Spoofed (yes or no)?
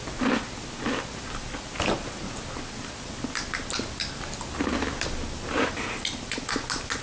no